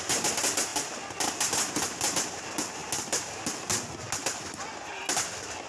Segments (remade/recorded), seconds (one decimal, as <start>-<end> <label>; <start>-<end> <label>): 0.0-5.7 recorded